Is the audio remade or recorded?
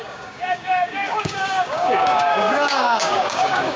remade